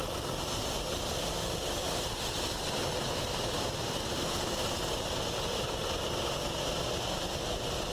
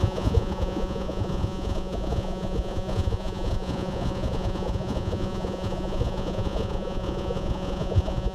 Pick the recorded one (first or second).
first